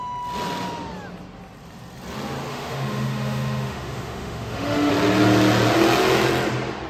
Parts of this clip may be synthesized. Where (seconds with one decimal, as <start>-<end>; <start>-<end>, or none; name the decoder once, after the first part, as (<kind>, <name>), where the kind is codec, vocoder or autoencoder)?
2.5-4.9 (autoencoder, DAC-VAE)